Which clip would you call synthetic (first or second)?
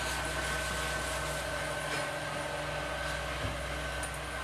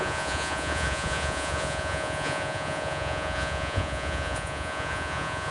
second